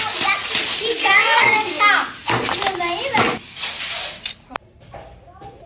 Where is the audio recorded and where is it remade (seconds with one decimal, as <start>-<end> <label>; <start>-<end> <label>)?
0.0-1.0 recorded; 1.0-1.8 remade; 1.8-5.7 recorded